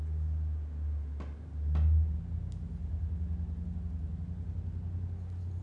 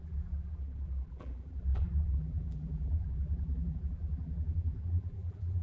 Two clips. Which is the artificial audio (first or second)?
second